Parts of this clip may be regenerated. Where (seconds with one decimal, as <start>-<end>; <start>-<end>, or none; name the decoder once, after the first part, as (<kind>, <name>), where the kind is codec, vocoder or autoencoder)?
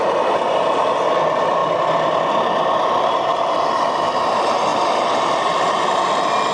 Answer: 4.7-5.4 (vocoder, BigVGAN v2)